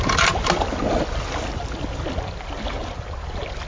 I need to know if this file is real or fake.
real